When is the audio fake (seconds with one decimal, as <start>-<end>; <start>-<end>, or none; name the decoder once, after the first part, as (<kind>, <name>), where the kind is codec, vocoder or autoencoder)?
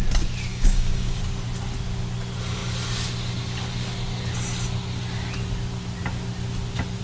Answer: 0.5-1.2 (codec, DAC)